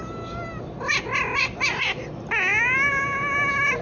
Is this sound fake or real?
real